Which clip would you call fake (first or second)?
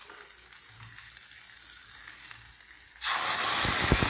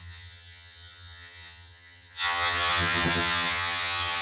second